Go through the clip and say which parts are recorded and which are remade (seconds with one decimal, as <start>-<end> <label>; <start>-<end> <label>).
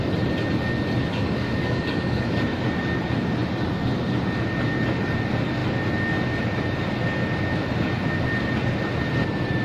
0.0-1.1 recorded; 1.1-2.6 remade; 2.6-9.6 recorded